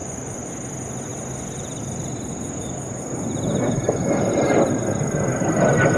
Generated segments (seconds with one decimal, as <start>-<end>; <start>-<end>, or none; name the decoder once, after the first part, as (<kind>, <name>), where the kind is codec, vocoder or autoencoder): 0.0-0.5 (vocoder, Vocos)